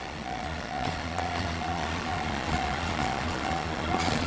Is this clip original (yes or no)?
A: no